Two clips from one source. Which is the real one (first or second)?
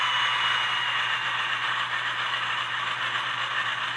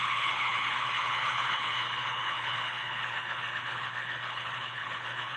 first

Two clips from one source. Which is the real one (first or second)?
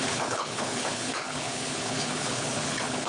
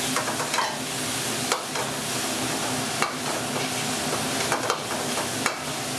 second